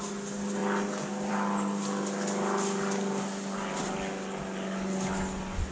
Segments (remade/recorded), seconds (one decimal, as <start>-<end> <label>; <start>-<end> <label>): 0.0-5.7 recorded